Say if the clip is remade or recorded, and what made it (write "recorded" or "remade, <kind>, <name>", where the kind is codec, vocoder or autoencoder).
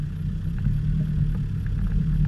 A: recorded